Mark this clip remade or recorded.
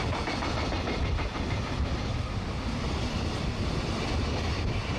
recorded